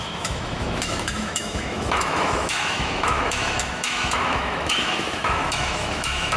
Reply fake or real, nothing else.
fake